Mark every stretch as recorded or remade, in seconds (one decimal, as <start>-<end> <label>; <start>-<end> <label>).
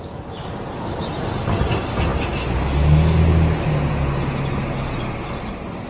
0.0-5.9 recorded